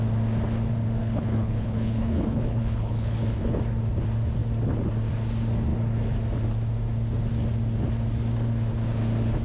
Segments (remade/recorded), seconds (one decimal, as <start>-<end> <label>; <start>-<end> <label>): 0.0-1.0 recorded; 1.0-3.6 remade; 3.6-9.4 recorded